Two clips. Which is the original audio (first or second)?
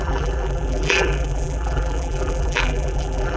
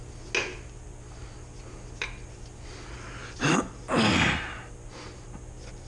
second